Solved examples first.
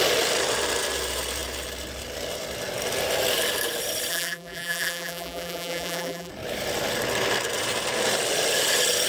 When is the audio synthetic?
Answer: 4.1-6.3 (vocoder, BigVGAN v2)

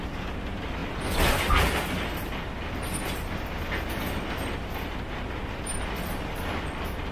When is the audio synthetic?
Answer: none

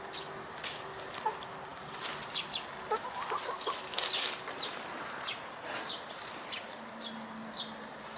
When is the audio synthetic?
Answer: none

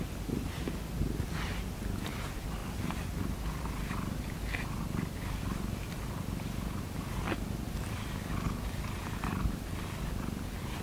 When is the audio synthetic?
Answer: none

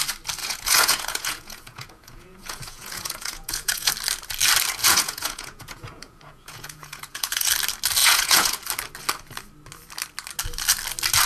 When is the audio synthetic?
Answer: 0.4-3.9 (vocoder, Vocos); 4.8-7.5; 8.0-8.6

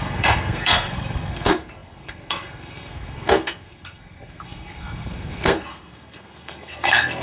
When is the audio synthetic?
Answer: 0.0-7.2 (codec, SNAC)